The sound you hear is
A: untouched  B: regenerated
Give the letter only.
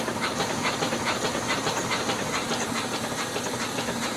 A